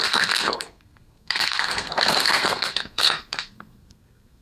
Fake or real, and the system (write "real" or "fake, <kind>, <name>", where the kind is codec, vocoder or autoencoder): fake, codec, SNAC